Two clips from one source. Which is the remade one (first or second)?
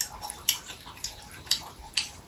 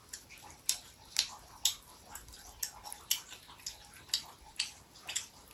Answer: first